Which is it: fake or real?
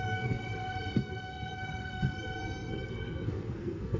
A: fake